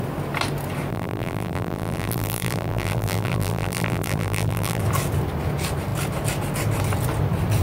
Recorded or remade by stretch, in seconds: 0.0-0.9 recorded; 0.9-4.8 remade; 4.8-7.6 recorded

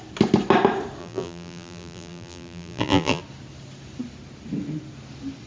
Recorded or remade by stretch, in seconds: 0.0-1.0 recorded; 1.0-3.2 remade; 3.2-5.5 recorded